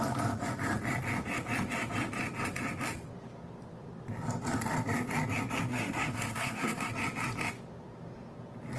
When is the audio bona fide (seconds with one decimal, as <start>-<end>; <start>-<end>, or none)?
0.0-5.7; 6.9-8.8